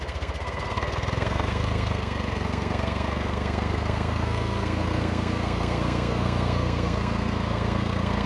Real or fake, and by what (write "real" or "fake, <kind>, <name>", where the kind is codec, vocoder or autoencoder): fake, codec, SNAC